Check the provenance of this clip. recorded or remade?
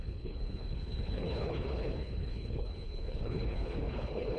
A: remade